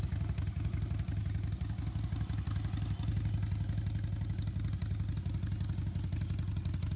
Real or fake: real